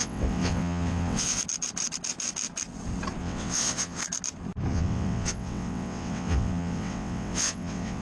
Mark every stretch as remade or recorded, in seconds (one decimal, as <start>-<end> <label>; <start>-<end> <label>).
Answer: 0.0-1.4 remade; 1.4-3.2 recorded; 3.2-4.0 remade; 4.0-4.7 recorded; 4.7-8.0 remade